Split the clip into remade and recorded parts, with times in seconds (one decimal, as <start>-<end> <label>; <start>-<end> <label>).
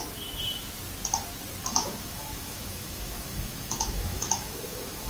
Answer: 0.0-1.6 recorded; 1.6-5.1 remade